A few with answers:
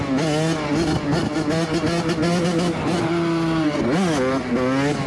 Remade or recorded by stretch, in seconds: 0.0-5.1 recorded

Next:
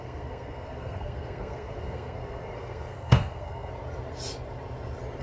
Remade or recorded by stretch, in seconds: 0.0-3.7 remade; 3.7-5.2 recorded

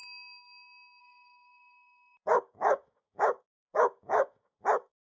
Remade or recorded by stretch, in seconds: 0.0-1.0 recorded; 1.0-5.1 remade

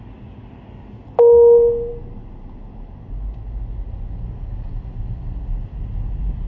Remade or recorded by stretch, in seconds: 0.0-6.5 recorded

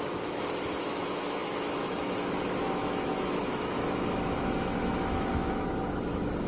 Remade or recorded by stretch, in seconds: 0.0-6.5 remade